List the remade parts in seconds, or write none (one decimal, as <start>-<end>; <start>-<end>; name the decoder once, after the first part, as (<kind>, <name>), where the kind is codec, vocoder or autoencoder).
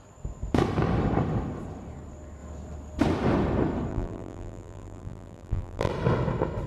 3.9-5.9 (vocoder, BigVGAN v2)